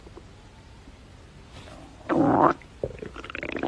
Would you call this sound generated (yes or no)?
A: no